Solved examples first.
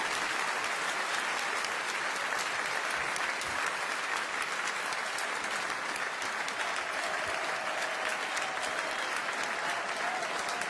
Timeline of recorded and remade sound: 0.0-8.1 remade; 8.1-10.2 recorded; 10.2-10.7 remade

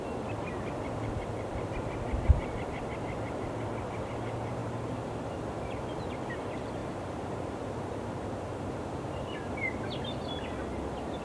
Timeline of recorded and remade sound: 0.0-6.8 recorded; 6.8-10.6 remade; 10.6-11.2 recorded

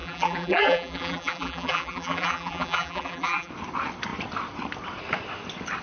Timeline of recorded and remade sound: 0.0-3.5 remade; 3.5-5.8 recorded

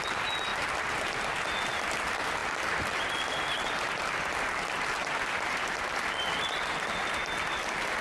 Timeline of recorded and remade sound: 0.0-8.0 recorded

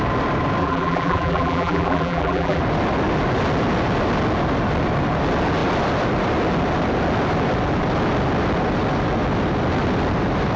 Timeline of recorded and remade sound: 0.0-0.6 recorded; 0.6-2.6 remade; 2.6-10.6 recorded

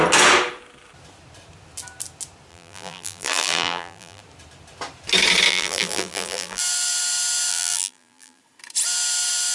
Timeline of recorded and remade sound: 0.0-2.5 recorded; 2.5-4.2 remade; 4.2-5.5 recorded; 5.5-6.6 remade; 6.6-7.5 recorded; 7.5-8.4 remade; 8.4-9.5 recorded

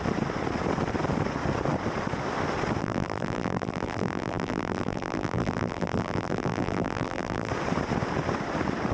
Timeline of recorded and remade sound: 0.0-2.8 recorded; 2.8-7.5 remade; 7.5-8.9 recorded